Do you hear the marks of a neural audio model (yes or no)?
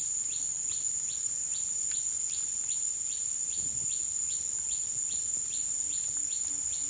no